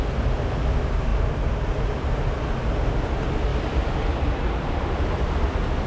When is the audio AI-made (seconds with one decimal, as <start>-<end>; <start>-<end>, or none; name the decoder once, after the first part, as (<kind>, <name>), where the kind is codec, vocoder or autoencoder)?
3.5-5.1 (vocoder, BigVGAN v2)